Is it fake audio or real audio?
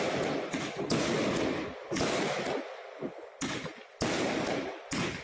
real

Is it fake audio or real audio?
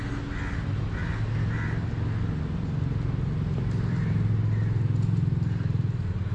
real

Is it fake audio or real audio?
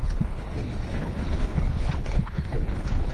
fake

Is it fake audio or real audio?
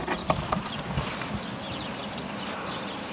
real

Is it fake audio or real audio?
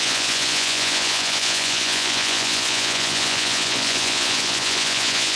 fake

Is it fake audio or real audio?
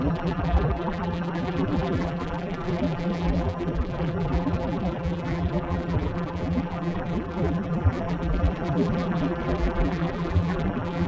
fake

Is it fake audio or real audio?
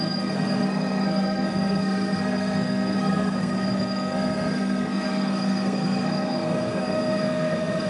fake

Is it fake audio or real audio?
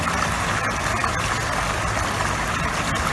real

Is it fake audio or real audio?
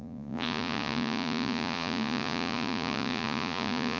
fake